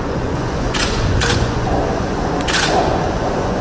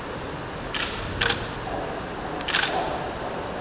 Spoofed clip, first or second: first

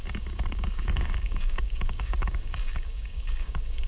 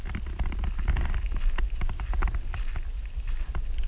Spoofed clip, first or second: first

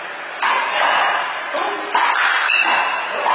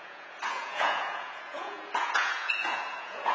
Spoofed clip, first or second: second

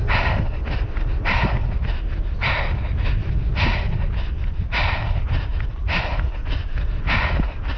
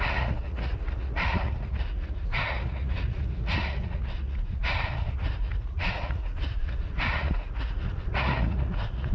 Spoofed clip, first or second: second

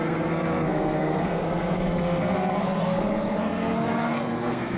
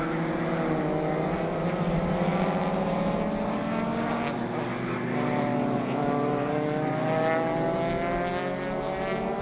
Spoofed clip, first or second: first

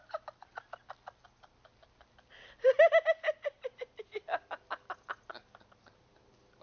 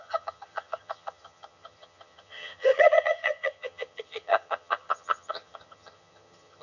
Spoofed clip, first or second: second